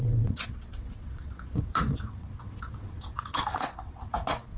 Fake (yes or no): yes